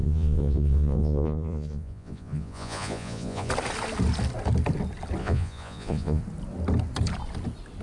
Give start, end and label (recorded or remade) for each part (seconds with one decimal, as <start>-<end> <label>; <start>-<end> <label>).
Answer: 0.0-3.5 remade; 3.5-5.2 recorded; 5.2-6.2 remade; 6.2-7.8 recorded